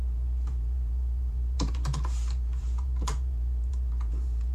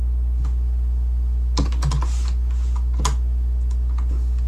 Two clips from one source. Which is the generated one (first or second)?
first